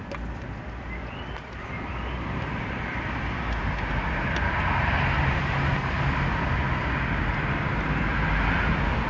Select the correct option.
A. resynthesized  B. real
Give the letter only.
B